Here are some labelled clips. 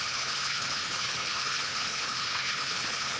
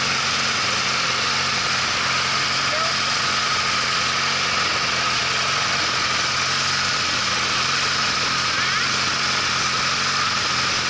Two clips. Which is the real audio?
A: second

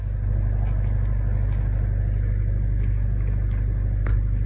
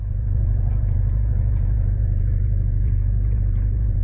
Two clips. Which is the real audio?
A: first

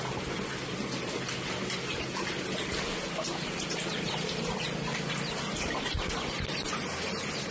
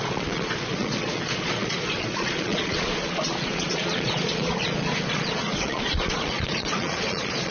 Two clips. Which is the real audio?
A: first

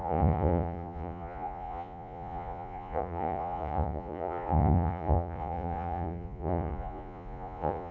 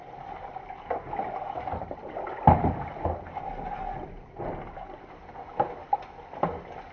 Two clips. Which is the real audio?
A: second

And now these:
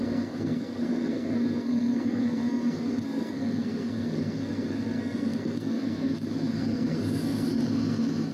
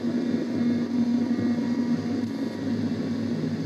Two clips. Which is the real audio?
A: second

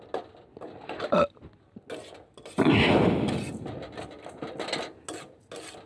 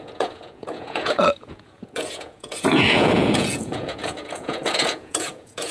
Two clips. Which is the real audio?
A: first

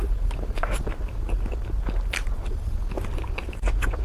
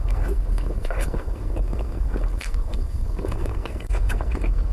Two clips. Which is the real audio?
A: first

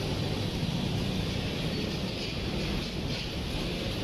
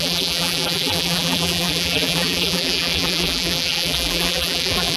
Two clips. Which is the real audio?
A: first